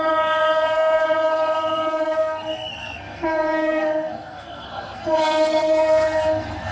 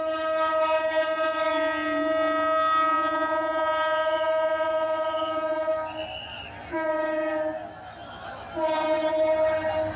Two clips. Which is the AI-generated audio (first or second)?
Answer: first